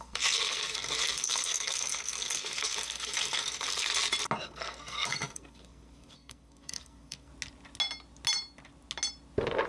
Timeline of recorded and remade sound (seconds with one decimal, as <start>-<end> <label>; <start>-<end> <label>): 0.0-3.9 remade; 3.9-4.4 recorded; 4.4-7.3 remade; 7.3-9.7 recorded